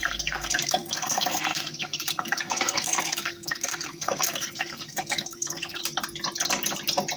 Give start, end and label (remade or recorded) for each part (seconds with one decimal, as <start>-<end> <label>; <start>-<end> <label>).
0.0-5.8 remade; 5.8-7.2 recorded